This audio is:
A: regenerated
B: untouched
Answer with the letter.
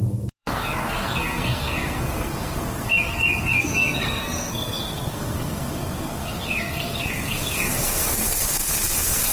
A